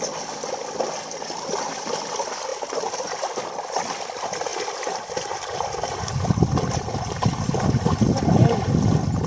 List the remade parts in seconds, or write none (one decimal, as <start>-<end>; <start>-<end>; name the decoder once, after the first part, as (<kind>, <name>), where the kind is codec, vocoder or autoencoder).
2.5-3.0 (vocoder, BigVGAN v2); 4.5-8.4